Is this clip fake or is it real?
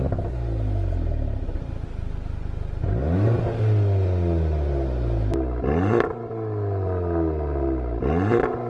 real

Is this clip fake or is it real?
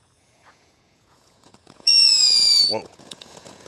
fake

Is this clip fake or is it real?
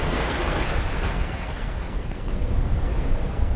fake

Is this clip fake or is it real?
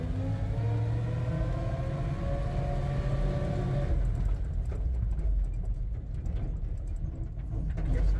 real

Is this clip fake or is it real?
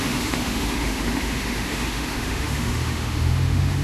fake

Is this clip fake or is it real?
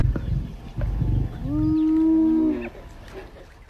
real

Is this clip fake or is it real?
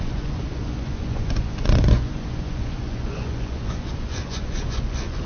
fake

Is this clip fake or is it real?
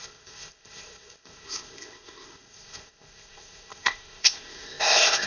fake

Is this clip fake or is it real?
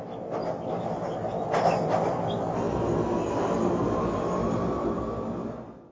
real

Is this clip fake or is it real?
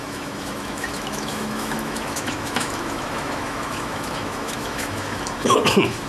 fake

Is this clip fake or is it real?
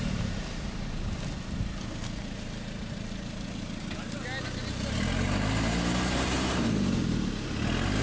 real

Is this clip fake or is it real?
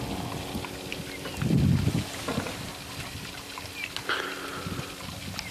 real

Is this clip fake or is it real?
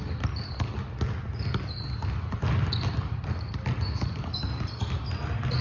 real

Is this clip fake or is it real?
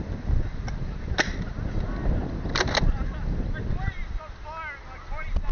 real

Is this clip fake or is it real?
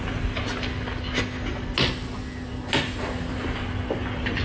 real